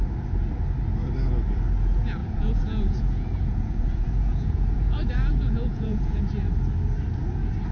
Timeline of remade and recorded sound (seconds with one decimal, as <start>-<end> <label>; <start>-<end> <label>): 0.0-2.2 recorded; 2.2-6.2 remade; 6.2-7.7 recorded